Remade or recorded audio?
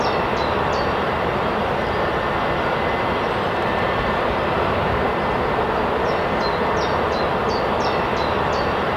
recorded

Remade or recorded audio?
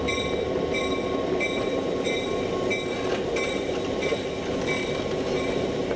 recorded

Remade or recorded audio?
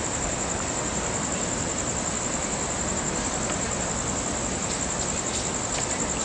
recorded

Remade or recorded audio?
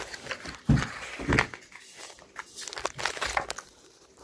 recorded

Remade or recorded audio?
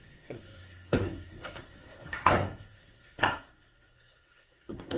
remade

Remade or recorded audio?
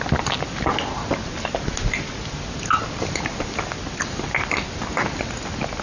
recorded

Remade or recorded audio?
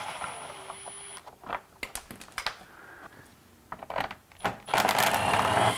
recorded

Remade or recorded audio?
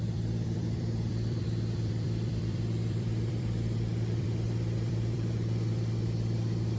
remade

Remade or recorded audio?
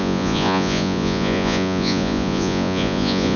remade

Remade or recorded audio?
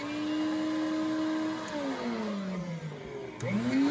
recorded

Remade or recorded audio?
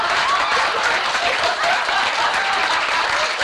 remade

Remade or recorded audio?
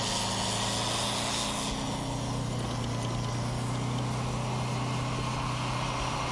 recorded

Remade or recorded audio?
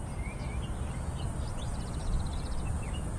recorded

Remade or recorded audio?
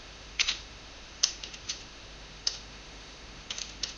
remade